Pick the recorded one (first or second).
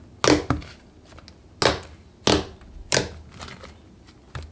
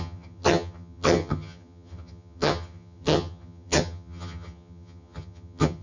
first